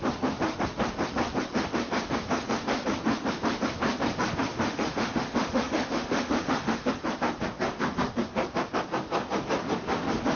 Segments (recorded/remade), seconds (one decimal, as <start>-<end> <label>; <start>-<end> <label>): 0.0-4.5 recorded; 4.5-6.9 remade; 6.9-10.4 recorded